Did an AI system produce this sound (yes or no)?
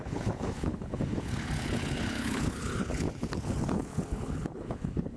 yes